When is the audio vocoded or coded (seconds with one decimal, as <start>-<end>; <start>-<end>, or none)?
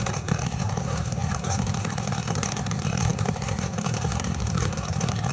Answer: 0.0-5.3